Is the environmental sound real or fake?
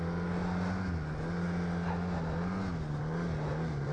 real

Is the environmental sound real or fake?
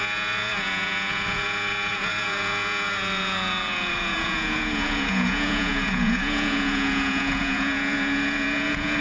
fake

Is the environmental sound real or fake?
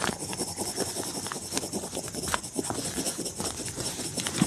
fake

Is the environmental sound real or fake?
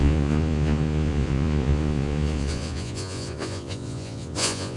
fake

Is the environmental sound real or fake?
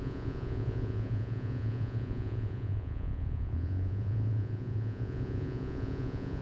fake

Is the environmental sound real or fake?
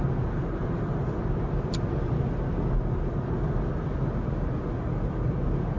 real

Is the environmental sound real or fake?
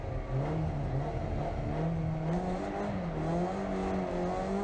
real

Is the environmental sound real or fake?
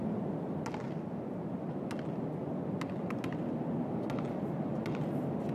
real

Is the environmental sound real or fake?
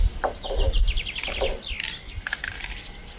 real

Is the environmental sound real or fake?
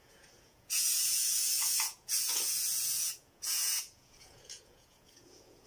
fake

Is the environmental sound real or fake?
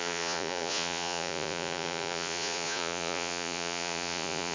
fake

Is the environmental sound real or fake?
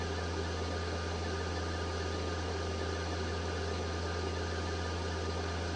real